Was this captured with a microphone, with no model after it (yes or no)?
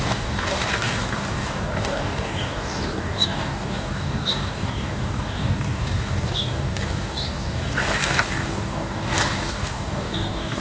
no